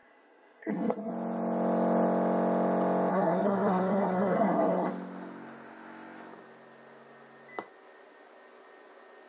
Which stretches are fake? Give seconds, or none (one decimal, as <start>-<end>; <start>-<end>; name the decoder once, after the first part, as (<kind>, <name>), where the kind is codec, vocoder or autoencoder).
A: 0.0-1.1 (codec, SNAC); 3.1-4.9